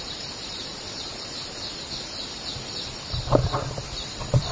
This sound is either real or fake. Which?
fake